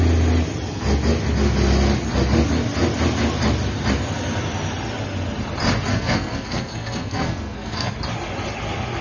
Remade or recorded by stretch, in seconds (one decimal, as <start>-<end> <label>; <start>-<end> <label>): 0.0-5.9 recorded; 5.9-7.9 remade; 7.9-9.0 recorded